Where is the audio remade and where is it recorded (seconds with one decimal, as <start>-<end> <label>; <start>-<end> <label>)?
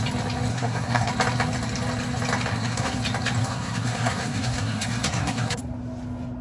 0.0-0.5 recorded; 0.5-1.1 remade; 1.1-2.5 recorded; 2.5-3.0 remade; 3.0-3.4 recorded; 3.4-5.6 remade; 5.6-6.4 recorded